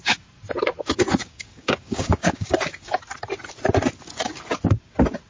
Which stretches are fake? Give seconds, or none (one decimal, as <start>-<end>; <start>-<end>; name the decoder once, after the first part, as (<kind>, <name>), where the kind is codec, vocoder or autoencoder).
1.2-2.9 (codec, DAC)